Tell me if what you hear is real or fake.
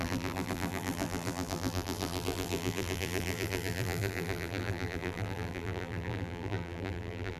fake